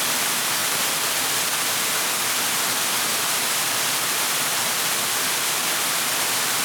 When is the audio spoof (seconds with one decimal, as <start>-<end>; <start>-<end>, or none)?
0.6-1.3; 3.1-6.6

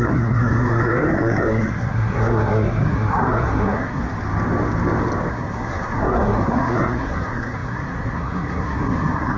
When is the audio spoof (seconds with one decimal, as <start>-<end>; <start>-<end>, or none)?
0.0-4.0; 5.3-9.4

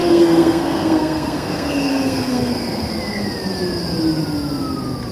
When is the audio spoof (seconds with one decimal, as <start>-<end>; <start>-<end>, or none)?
0.0-3.0

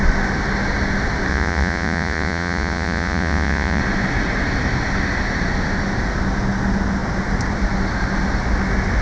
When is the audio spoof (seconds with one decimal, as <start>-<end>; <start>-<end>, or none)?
1.3-3.8

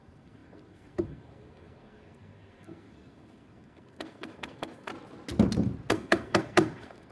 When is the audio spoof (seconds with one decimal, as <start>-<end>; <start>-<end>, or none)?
0.0-4.9; 5.9-7.1

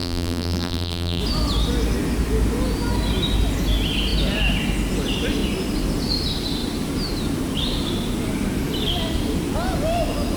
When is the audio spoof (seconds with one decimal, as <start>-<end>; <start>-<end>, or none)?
0.0-1.2

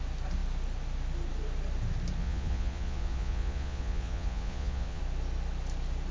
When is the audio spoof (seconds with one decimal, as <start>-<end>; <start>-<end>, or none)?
2.2-5.0

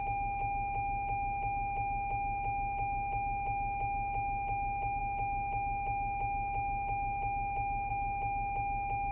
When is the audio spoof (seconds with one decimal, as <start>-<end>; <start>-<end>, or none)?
none